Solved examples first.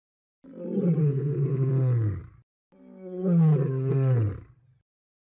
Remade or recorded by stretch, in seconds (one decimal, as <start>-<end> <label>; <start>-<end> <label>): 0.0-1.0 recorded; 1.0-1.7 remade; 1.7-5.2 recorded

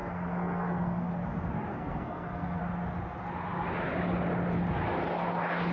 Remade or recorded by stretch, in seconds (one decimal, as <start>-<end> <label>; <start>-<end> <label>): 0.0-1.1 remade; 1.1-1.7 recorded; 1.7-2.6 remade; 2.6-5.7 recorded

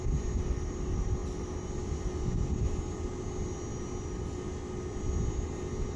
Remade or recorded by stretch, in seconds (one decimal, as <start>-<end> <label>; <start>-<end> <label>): 0.0-6.0 recorded

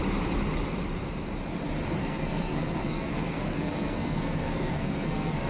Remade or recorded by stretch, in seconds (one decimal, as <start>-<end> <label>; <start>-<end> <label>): 0.0-2.0 recorded; 2.0-5.5 remade

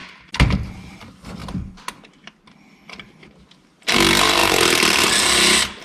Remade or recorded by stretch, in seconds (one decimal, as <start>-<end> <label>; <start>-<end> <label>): 0.0-5.8 recorded